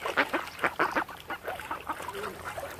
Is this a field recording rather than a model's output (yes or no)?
no